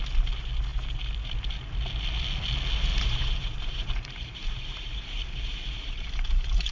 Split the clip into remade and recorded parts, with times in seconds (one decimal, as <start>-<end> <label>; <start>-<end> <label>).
0.0-2.9 recorded; 2.9-6.1 remade; 6.1-6.7 recorded